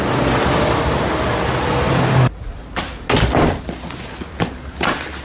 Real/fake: real